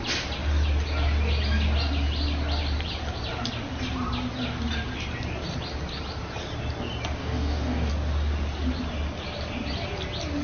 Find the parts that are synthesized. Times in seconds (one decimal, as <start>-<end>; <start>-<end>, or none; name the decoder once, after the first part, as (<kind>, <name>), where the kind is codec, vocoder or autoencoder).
7.2-7.9 (codec, DAC)